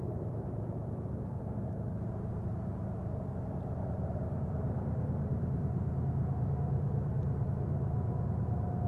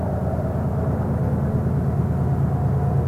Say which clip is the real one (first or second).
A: second